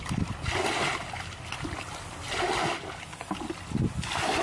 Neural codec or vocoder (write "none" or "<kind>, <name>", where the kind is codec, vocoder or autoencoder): none